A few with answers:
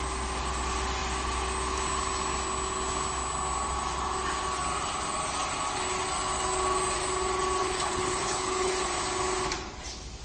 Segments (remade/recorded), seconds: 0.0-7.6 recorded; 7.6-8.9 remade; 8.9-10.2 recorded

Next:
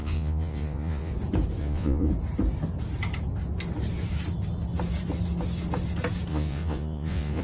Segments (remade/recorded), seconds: 0.0-1.1 remade; 1.1-1.6 recorded; 1.6-2.1 remade; 2.1-6.3 recorded; 6.3-7.4 remade